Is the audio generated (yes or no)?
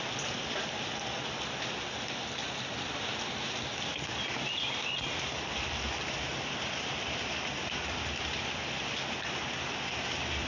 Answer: no